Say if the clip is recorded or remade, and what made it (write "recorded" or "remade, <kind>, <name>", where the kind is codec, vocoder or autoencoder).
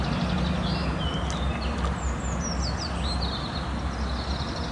recorded